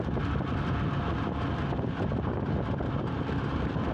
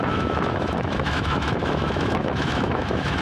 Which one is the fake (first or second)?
second